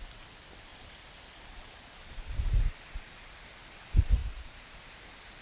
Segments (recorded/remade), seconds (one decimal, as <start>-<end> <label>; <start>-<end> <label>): 0.0-0.7 recorded; 0.7-3.0 remade; 3.0-4.2 recorded; 4.2-4.7 remade; 4.7-5.4 recorded